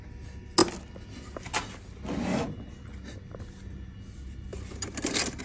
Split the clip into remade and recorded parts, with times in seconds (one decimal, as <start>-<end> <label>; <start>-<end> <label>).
0.0-5.4 recorded